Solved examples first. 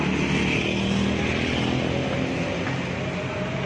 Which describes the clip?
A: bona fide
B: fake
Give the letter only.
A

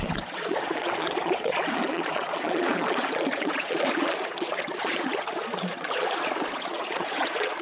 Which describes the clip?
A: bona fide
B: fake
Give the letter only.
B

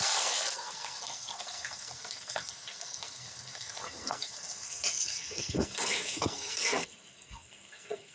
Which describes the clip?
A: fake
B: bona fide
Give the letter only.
A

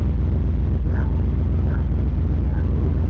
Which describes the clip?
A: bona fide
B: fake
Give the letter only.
A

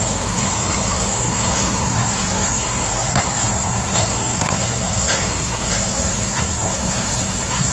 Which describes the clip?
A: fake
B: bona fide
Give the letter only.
A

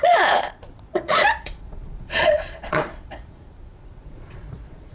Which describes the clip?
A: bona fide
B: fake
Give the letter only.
B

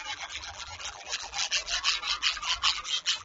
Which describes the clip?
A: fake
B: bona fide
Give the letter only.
A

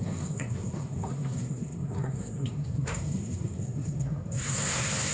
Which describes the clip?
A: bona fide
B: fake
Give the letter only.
B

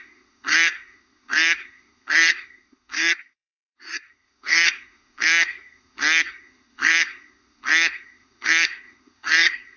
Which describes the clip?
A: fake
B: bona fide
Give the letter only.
A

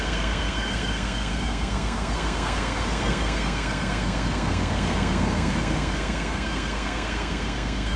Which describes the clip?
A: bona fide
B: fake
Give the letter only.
B